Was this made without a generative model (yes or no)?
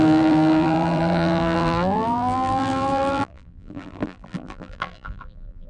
no